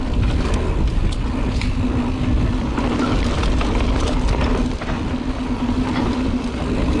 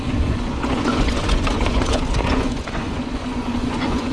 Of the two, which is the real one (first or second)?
first